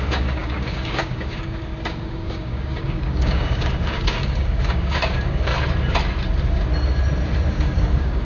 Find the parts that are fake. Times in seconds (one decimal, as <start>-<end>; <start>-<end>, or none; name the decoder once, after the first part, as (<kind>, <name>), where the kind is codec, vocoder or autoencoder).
0.0-5.5 (codec, DAC); 7.5-8.2